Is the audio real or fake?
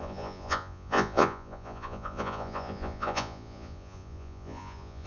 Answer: fake